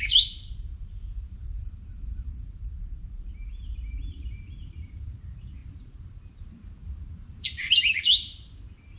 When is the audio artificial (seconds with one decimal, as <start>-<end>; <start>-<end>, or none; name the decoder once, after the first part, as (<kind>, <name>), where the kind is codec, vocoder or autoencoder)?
0.0-9.0 (vocoder, BigVGAN v2)